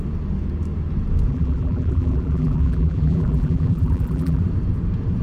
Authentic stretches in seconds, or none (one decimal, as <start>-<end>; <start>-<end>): 0.0-1.3; 4.4-5.2